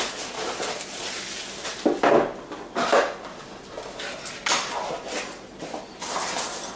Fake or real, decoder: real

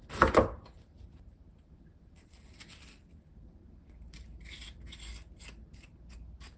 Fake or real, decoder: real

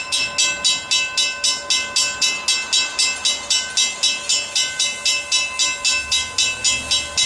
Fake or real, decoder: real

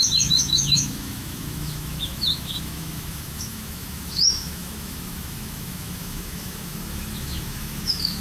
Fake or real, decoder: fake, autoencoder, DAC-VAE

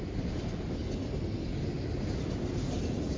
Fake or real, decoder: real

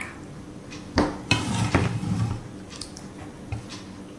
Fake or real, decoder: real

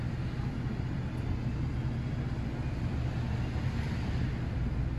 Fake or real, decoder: real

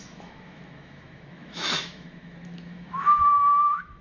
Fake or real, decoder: fake, autoencoder, DAC-VAE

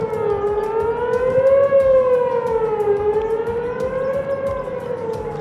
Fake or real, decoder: real